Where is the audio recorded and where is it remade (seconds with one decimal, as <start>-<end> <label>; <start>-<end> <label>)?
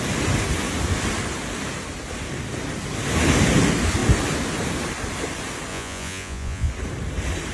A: 0.0-5.7 recorded; 5.7-6.7 remade; 6.7-7.5 recorded